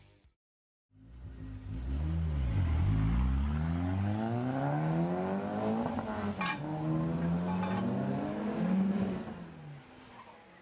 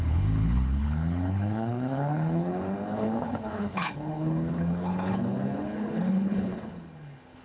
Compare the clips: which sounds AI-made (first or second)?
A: second